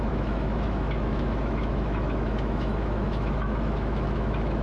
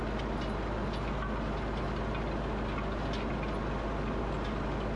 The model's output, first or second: first